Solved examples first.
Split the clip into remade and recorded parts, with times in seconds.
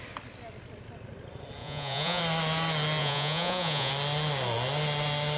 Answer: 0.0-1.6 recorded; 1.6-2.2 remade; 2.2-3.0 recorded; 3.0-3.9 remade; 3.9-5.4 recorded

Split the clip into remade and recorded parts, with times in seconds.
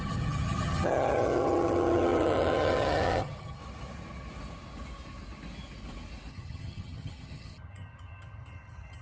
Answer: 0.0-3.6 remade; 3.6-6.3 recorded; 6.3-9.0 remade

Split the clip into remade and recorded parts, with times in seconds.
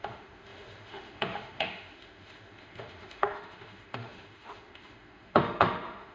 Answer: 0.0-6.1 remade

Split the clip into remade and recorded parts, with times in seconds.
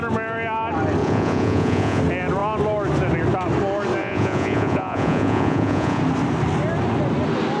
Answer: 0.0-1.0 recorded; 1.0-2.0 remade; 2.0-4.0 recorded; 4.0-6.0 remade; 6.0-7.6 recorded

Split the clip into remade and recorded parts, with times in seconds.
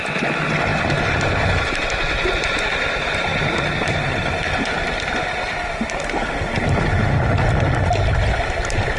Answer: 0.0-9.0 recorded